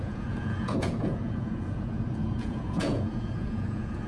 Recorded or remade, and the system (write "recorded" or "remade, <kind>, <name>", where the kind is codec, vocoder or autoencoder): remade, vocoder, Vocos